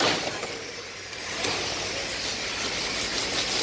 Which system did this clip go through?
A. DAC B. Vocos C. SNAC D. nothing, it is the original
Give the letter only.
D